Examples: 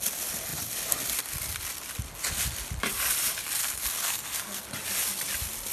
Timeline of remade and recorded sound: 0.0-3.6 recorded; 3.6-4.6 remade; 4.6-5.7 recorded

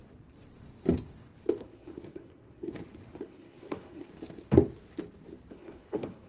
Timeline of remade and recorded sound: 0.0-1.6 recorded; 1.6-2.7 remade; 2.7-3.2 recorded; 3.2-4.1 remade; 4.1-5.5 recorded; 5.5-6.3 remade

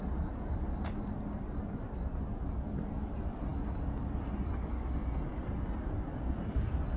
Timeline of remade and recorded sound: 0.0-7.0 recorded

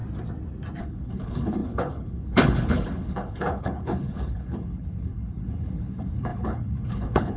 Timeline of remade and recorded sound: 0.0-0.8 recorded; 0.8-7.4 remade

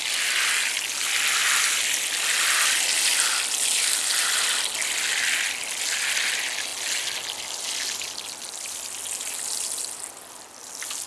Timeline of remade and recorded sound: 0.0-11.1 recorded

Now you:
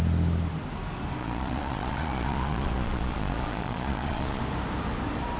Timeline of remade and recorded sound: 0.0-1.2 recorded; 1.2-4.4 remade; 4.4-5.4 recorded